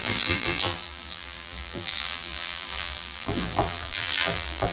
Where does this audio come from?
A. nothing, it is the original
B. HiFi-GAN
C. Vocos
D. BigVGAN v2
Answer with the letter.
D